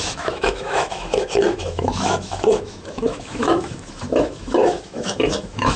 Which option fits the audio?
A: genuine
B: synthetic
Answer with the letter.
B